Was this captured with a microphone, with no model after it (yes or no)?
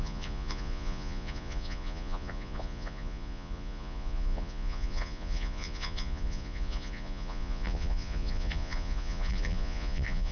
no